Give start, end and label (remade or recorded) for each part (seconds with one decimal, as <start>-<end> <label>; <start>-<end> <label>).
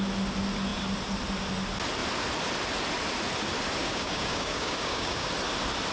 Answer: 0.0-3.8 recorded; 3.8-5.3 remade; 5.3-5.9 recorded